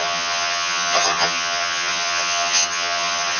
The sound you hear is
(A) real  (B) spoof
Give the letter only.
B